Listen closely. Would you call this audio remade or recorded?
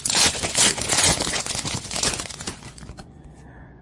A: remade